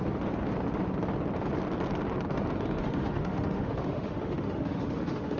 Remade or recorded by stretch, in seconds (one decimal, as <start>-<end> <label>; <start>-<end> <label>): 0.0-2.8 recorded; 2.8-5.4 remade